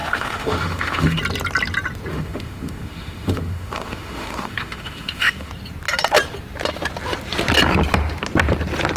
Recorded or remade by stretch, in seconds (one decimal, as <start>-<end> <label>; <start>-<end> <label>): 0.0-1.2 remade; 1.2-2.1 recorded; 2.1-5.5 remade; 5.5-9.0 recorded